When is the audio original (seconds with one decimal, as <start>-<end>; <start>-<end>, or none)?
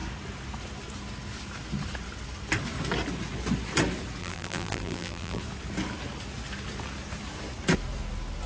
0.0-4.2; 5.4-8.5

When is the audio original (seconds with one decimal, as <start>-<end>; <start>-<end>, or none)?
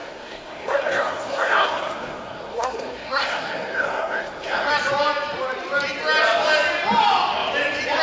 4.7-8.0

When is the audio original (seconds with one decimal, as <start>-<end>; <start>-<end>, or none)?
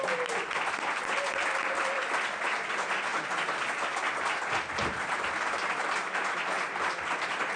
0.0-7.6